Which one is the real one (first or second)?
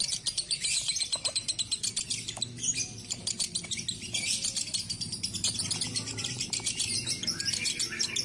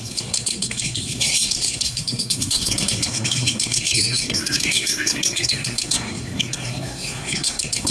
first